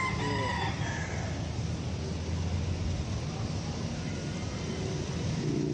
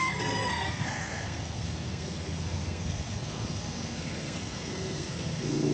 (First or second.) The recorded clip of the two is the first